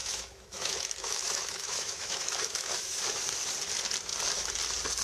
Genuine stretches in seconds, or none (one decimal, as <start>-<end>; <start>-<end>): 3.0-5.0